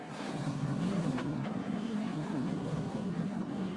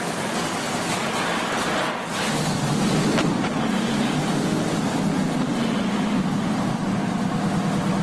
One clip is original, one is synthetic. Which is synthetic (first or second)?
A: first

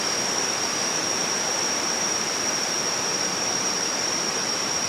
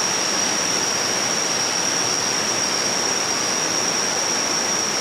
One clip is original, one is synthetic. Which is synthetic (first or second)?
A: first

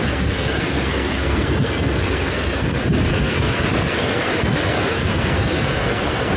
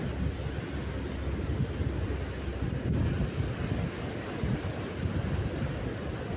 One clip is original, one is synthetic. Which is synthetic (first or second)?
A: first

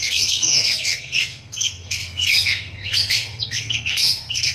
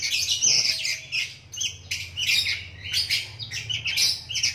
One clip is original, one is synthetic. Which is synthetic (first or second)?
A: first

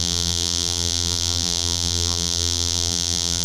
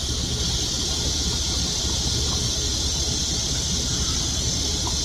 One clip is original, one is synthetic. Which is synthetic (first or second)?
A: first